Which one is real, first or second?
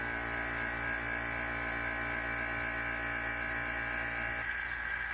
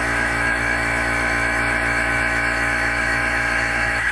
first